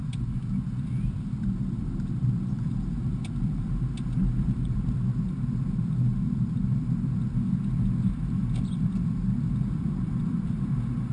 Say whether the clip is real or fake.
fake